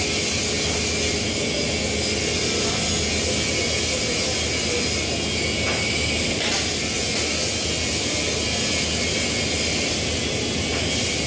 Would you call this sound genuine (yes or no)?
yes